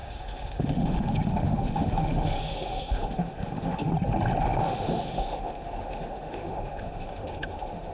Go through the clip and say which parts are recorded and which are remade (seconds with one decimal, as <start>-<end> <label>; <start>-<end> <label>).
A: 0.0-3.9 remade; 3.9-4.4 recorded; 4.4-7.9 remade